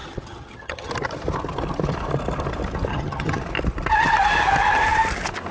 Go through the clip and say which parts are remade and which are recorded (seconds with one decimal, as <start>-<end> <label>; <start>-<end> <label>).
0.0-0.9 remade; 0.9-2.9 recorded; 2.9-3.4 remade; 3.4-5.5 recorded